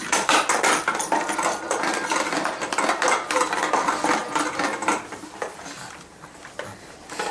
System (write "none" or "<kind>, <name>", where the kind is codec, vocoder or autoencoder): none